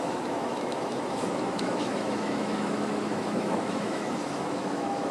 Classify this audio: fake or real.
fake